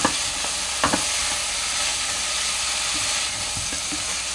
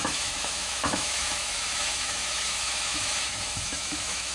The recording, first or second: first